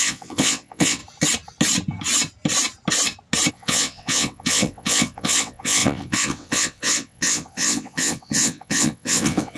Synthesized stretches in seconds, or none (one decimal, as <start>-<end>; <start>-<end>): 0.0-1.0; 3.5-9.6

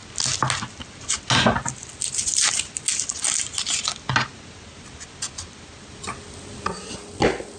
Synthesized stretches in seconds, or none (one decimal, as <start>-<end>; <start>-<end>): none

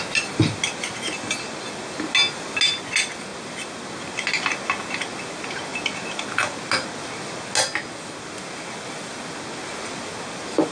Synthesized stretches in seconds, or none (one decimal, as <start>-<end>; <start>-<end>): none

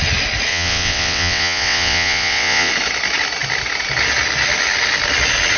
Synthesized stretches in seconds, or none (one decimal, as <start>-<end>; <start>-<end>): 0.5-2.7

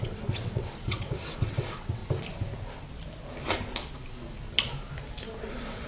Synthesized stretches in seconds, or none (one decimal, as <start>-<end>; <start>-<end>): 0.0-2.0; 5.5-5.9